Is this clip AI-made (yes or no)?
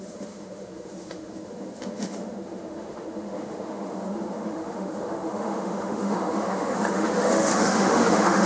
yes